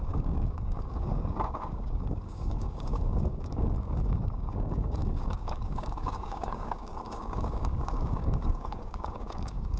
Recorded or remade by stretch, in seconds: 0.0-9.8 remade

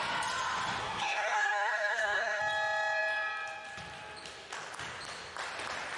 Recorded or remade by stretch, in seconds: 0.0-0.8 recorded; 0.8-2.4 remade; 2.4-6.0 recorded

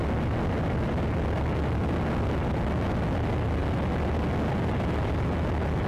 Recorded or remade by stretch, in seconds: 0.0-5.9 recorded

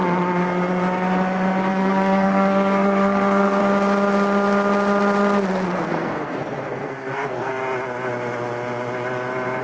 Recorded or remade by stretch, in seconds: 0.0-1.7 recorded; 1.7-3.6 remade; 3.6-5.9 recorded; 5.9-7.6 remade; 7.6-9.6 recorded

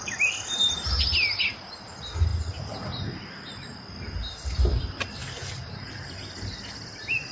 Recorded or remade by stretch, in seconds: 0.0-7.3 recorded

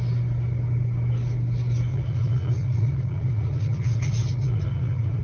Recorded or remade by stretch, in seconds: 0.0-1.9 recorded; 1.9-5.2 remade

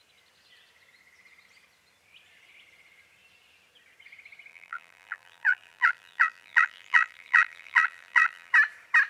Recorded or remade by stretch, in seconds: 0.0-4.5 recorded; 4.5-8.5 remade; 8.5-9.1 recorded